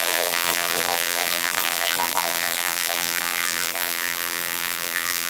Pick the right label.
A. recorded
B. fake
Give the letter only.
B